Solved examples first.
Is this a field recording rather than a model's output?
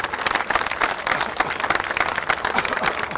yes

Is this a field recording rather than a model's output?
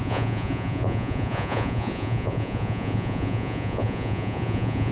no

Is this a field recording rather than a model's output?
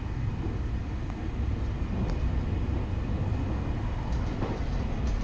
yes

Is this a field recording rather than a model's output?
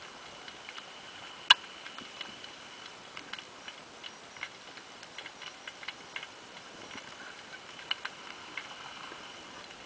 yes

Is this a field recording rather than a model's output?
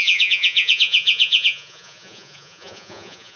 no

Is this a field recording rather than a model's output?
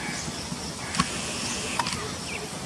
yes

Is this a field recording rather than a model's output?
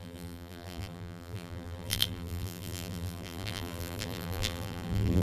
no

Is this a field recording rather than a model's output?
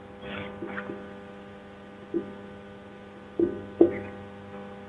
yes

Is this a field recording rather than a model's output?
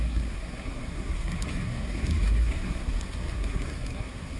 no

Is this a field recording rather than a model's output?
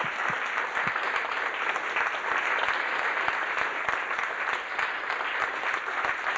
yes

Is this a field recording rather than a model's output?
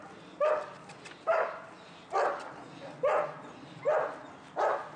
yes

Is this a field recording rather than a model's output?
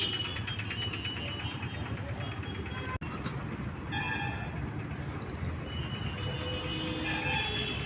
yes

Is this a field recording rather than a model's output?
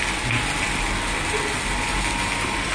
yes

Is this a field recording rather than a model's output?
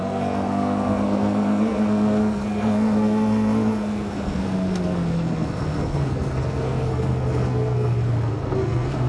no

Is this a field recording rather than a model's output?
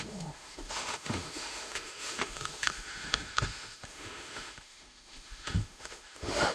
no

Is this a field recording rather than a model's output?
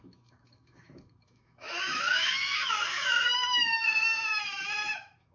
no